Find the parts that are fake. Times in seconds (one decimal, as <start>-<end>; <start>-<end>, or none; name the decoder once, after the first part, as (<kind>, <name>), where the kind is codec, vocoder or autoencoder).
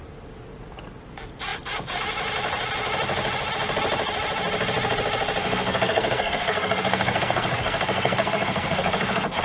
5.4-9.4 (codec, SNAC)